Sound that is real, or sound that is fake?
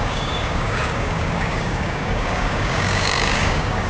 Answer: fake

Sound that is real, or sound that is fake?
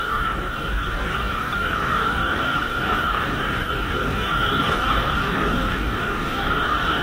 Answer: fake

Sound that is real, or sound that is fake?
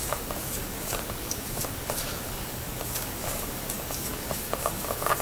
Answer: fake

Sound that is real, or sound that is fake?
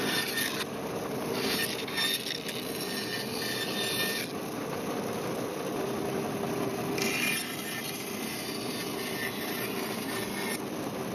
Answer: real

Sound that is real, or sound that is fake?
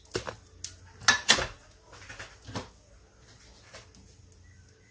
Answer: real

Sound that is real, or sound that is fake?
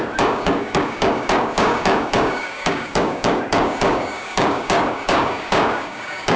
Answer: fake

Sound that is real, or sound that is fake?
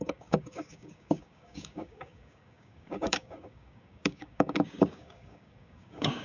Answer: fake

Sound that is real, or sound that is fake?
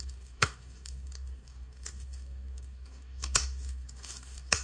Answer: fake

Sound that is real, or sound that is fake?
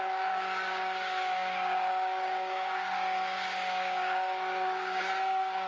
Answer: fake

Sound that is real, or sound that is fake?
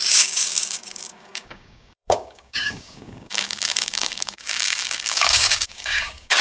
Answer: fake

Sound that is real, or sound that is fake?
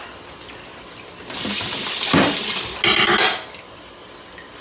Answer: real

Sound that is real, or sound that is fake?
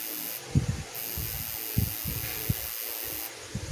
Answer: real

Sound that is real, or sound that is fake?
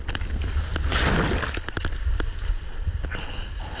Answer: real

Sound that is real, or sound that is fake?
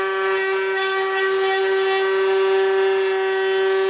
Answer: real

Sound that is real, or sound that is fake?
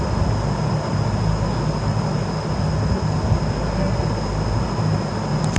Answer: real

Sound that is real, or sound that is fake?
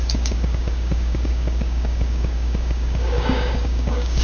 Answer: fake